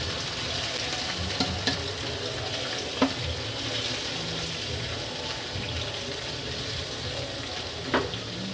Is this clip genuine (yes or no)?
yes